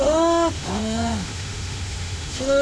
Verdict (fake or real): fake